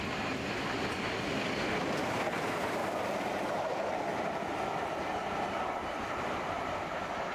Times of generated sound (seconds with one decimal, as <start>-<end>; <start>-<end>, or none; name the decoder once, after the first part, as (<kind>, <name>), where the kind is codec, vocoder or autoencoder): none